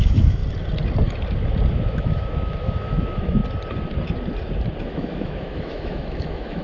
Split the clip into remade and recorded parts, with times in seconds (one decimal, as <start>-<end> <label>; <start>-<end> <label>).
0.0-0.4 remade; 0.4-1.7 recorded; 1.7-3.4 remade; 3.4-4.8 recorded; 4.8-6.6 remade